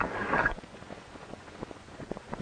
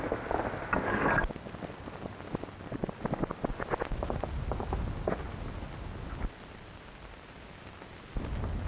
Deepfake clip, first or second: first